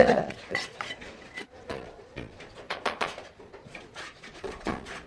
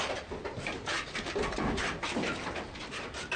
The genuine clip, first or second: second